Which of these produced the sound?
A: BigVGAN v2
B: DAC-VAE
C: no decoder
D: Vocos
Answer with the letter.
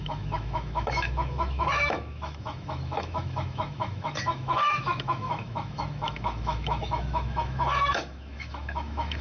B